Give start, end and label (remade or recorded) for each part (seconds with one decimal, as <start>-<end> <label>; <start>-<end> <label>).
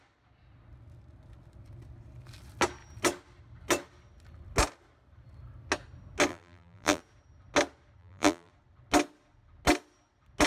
0.0-6.3 recorded; 6.3-7.0 remade; 7.0-8.0 recorded; 8.0-8.5 remade; 8.5-10.5 recorded